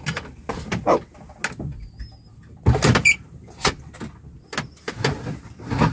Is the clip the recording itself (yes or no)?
yes